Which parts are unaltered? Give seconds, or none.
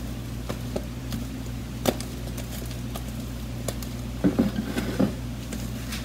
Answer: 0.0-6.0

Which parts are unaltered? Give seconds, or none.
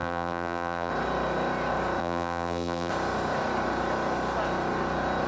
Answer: 0.9-2.0; 2.9-5.3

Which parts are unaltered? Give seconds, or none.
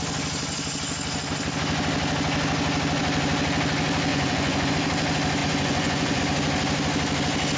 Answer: 0.0-4.1; 4.7-5.4; 6.2-7.6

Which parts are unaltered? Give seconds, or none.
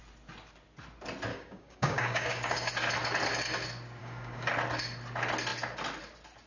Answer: 0.0-1.3; 2.7-4.0; 4.5-6.5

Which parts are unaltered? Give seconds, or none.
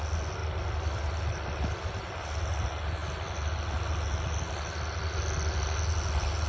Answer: 0.0-0.4; 2.4-6.5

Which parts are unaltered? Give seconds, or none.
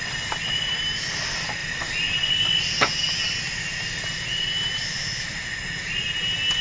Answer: 0.0-6.6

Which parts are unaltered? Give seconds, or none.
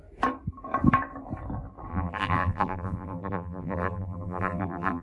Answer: 0.0-1.9